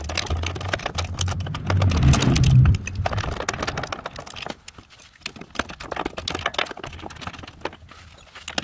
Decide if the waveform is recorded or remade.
recorded